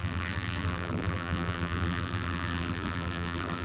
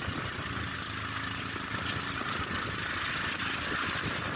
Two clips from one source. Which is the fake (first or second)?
first